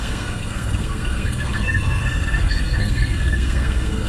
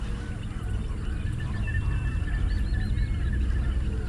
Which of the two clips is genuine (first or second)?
second